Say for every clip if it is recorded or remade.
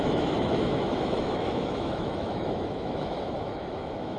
remade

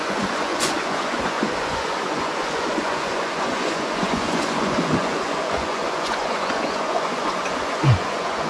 remade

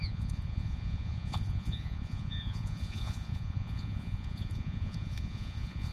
remade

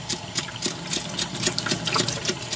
remade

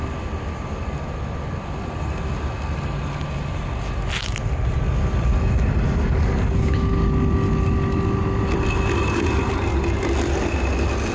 recorded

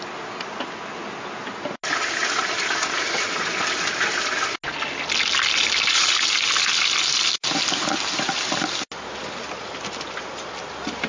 recorded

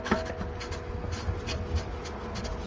recorded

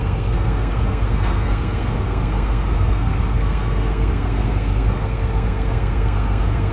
remade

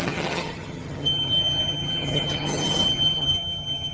remade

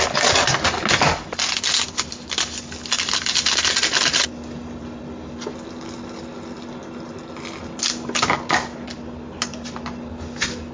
recorded